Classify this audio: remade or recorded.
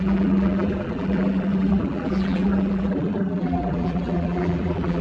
remade